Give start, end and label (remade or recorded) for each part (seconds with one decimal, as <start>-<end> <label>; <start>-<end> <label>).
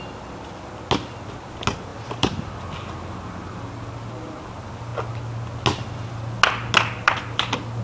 0.0-1.9 recorded; 1.9-2.5 remade; 2.5-7.8 recorded